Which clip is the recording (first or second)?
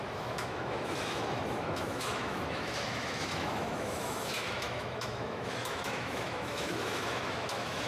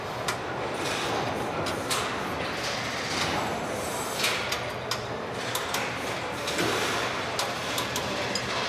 second